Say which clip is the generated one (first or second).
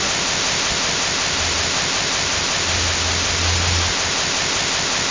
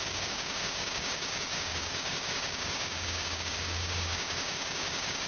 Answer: second